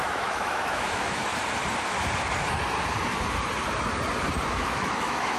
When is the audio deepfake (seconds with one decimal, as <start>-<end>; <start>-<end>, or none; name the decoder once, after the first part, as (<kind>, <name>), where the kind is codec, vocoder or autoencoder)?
0.0-1.3 (autoencoder, DAC-VAE); 4.5-5.4